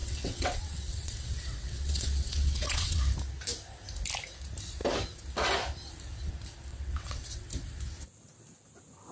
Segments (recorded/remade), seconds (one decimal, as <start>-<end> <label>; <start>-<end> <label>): 0.0-3.0 remade; 3.0-6.7 recorded; 6.7-7.5 remade; 7.5-9.1 recorded